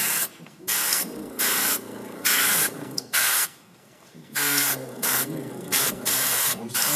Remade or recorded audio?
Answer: remade